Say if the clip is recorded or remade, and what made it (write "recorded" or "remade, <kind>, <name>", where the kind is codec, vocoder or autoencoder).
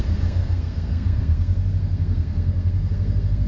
remade, codec, SNAC